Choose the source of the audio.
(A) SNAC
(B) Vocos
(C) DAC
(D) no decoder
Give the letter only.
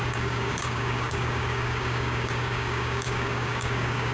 C